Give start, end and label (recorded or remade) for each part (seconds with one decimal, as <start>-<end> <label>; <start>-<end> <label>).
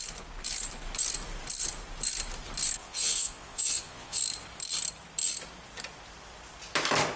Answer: 0.0-2.8 recorded; 2.8-4.2 remade; 4.2-7.2 recorded